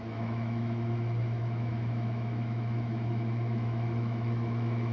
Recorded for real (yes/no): no